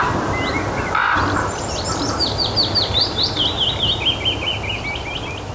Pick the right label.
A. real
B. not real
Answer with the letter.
A